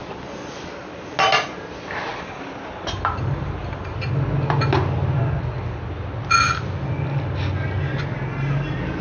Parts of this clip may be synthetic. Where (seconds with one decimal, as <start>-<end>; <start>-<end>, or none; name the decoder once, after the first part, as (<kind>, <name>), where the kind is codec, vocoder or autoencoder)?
none